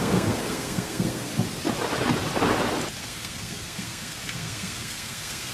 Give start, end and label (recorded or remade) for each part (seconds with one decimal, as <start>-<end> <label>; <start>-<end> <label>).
0.0-1.3 remade; 1.3-3.0 recorded; 3.0-5.5 remade